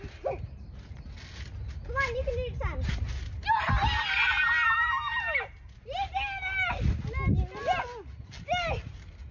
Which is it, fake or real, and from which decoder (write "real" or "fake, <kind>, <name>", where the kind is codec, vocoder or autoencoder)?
real